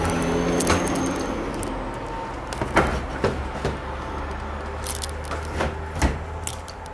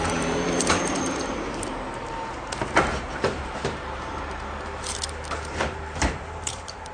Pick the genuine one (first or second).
first